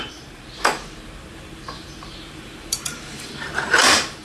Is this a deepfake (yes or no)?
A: yes